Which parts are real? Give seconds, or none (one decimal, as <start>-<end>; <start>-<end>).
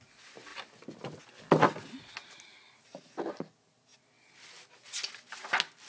0.0-5.9